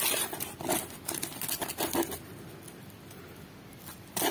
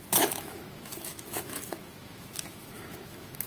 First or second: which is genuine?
first